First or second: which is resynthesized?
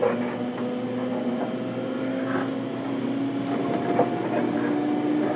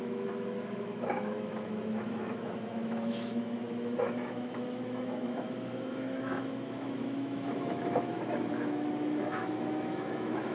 second